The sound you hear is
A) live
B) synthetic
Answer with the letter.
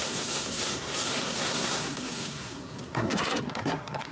B